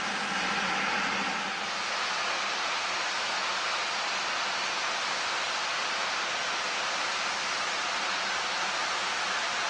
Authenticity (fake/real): real